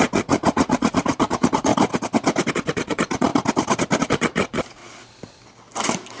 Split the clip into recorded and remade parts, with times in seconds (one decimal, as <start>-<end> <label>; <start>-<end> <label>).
0.0-1.7 remade; 1.7-2.5 recorded; 2.5-3.3 remade; 3.3-4.0 recorded; 4.0-4.8 remade; 4.8-6.2 recorded